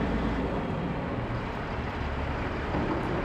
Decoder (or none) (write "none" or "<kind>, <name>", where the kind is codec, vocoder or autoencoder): vocoder, BigVGAN v2